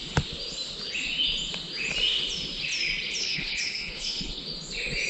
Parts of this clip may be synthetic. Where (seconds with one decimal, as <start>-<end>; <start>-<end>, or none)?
3.2-4.4